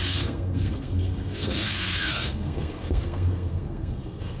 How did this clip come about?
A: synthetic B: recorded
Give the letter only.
A